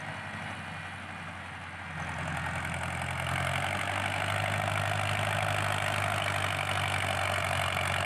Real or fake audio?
real